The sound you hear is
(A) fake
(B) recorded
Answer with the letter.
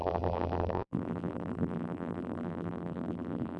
A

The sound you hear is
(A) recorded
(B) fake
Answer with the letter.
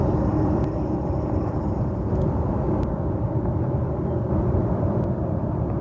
B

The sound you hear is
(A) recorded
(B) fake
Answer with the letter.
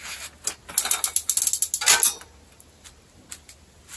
A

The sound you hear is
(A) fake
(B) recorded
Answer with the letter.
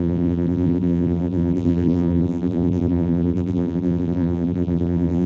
A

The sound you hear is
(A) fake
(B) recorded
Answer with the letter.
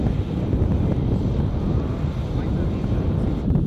A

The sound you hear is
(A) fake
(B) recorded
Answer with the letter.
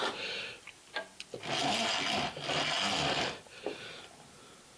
B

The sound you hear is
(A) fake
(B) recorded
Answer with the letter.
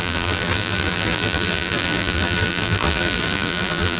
A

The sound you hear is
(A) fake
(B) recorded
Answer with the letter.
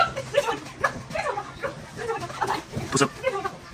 B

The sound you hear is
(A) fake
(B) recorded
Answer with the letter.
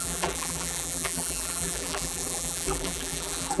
A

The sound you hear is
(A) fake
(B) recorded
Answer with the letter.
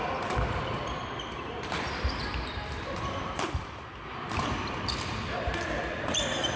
A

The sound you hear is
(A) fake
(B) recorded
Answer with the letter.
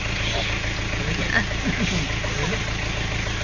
B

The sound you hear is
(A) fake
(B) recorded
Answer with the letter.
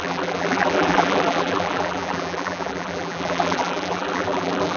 A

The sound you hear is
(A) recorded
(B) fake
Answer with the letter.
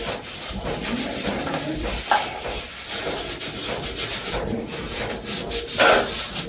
A